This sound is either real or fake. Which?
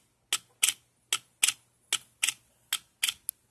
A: real